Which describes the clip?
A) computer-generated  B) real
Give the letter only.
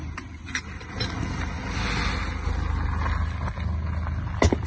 B